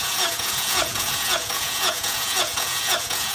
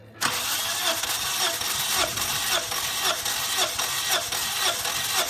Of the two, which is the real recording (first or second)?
second